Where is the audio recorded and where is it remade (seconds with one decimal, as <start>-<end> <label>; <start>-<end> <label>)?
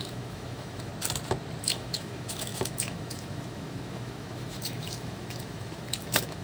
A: 0.0-0.9 remade; 0.9-1.6 recorded; 1.6-6.4 remade